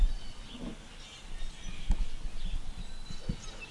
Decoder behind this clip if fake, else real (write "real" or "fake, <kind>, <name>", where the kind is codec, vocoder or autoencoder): real